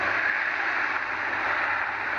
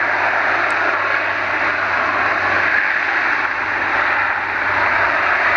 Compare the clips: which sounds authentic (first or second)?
second